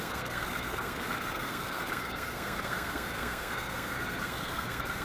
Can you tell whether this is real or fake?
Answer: fake